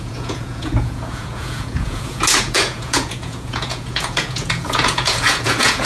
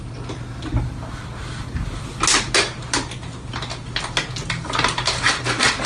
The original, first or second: second